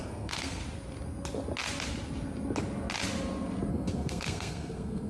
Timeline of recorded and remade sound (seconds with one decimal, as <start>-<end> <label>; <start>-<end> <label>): 0.0-0.6 remade; 0.6-3.7 recorded; 3.7-5.1 remade